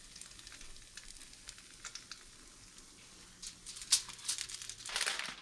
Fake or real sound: real